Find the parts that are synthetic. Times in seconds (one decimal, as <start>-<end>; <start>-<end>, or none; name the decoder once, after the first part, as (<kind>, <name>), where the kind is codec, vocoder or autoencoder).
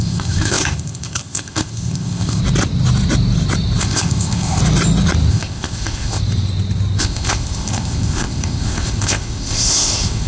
0.0-2.4 (codec, ZipCodec); 3.8-4.6; 5.3-6.2; 7.0-10.3